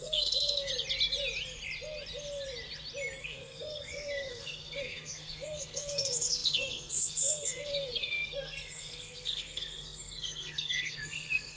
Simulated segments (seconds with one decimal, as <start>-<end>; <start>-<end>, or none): 0.0-0.7; 3.2-11.6